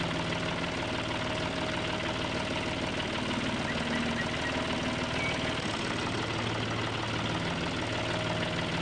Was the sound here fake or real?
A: real